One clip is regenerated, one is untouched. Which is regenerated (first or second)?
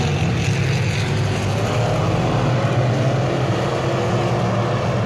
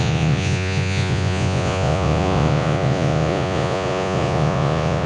second